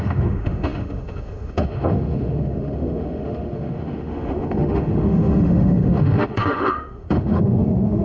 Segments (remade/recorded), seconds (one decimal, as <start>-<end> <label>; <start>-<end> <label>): 0.0-8.0 remade